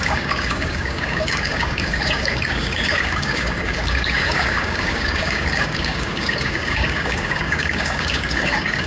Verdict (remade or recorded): remade